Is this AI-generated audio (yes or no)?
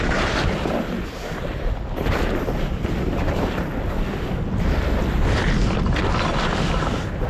no